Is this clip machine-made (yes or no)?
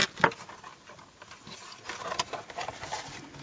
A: no